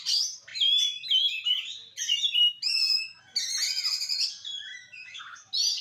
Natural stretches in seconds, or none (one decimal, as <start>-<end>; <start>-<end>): 0.0-4.7; 5.2-5.8